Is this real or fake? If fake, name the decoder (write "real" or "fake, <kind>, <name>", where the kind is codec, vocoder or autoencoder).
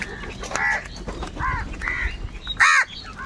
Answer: real